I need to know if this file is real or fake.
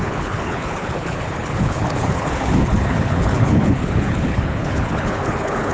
fake